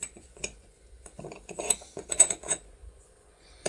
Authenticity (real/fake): fake